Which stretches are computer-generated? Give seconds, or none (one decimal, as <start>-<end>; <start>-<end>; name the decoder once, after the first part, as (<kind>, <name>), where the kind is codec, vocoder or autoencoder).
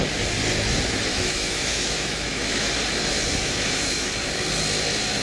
1.1-2.7 (autoencoder, DAC-VAE); 3.4-4.1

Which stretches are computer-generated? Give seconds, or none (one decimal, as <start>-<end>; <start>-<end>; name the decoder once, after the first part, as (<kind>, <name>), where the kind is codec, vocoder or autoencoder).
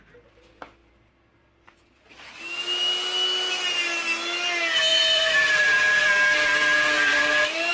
4.9-7.7 (vocoder, BigVGAN v2)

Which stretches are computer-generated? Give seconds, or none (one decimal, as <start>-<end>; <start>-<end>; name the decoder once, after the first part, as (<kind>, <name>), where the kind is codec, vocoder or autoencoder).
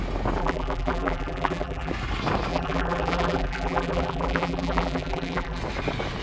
0.4-1.9 (vocoder, BigVGAN v2); 2.5-5.6